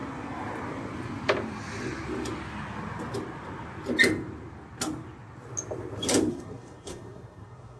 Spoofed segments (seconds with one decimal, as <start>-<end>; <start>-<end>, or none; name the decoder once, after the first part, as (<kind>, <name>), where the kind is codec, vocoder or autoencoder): 6.3-7.8 (codec, SNAC)